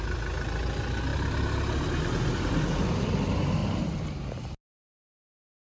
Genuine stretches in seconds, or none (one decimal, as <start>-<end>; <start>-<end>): 0.0-5.7